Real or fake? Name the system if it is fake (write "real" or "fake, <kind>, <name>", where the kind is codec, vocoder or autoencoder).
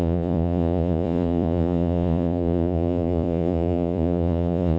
fake, vocoder, Vocos